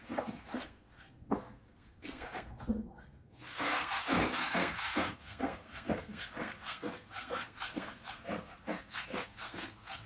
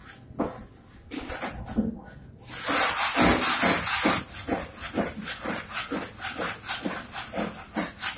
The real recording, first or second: second